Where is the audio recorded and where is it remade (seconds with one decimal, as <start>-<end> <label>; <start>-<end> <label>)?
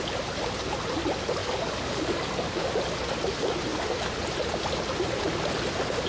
0.0-1.4 recorded; 1.4-2.7 remade; 2.7-6.1 recorded